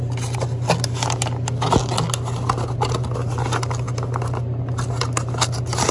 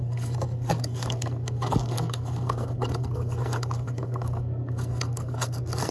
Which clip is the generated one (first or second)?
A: second